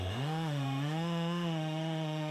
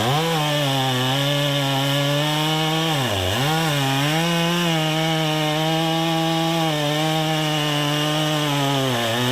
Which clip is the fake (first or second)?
first